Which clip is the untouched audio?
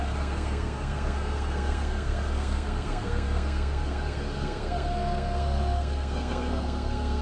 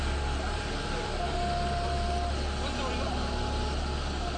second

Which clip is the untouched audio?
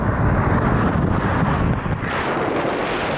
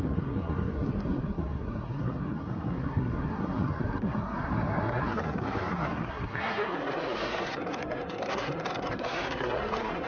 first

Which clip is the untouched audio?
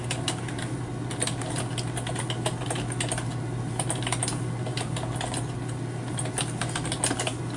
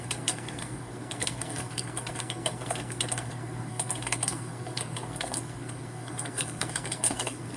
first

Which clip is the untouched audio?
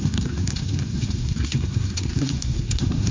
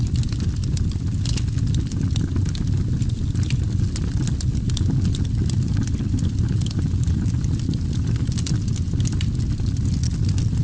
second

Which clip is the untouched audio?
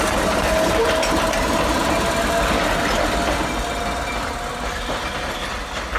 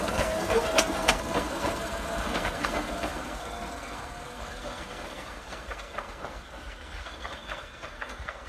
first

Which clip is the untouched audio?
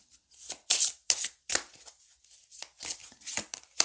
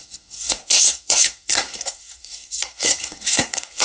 first